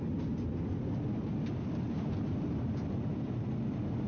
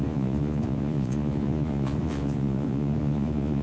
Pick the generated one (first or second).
second